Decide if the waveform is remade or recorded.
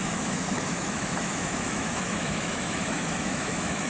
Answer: remade